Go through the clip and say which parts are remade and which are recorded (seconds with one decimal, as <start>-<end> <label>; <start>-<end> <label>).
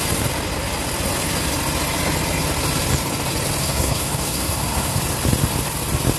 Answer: 0.0-3.6 recorded; 3.6-5.0 remade; 5.0-6.2 recorded